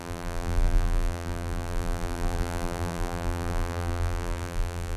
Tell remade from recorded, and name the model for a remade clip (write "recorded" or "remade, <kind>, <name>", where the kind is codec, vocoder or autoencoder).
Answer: remade, vocoder, BigVGAN v2